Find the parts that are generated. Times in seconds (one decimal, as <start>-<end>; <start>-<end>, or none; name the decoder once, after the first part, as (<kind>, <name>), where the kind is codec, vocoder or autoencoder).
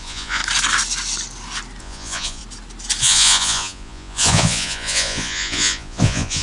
0.0-0.4 (vocoder, Vocos); 1.8-2.4; 3.0-6.4